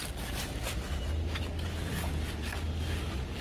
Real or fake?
real